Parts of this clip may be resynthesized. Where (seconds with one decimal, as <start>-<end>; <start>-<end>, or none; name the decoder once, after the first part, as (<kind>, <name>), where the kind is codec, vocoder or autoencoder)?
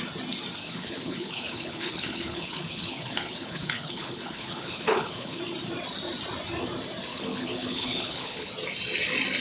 0.6-5.4 (codec, HILCodec); 7.1-8.5